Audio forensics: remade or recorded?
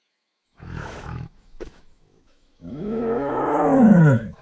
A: remade